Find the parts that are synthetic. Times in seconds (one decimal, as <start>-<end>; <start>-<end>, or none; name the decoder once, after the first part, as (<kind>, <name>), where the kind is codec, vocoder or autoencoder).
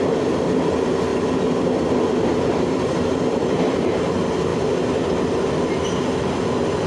none